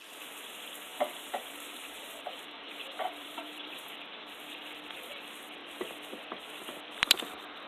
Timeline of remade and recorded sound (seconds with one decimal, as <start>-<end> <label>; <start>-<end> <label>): 0.0-0.9 recorded; 0.9-3.9 remade; 3.9-7.7 recorded